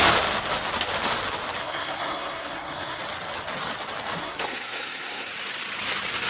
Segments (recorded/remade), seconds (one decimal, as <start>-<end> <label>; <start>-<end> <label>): 0.0-1.6 recorded; 1.6-3.0 remade; 3.0-4.2 recorded; 4.2-5.3 remade; 5.3-6.3 recorded